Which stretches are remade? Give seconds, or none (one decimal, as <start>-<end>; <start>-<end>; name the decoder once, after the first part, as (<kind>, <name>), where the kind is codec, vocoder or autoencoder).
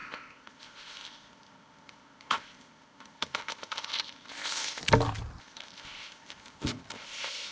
0.0-4.8 (codec, ZipCodec); 5.4-7.5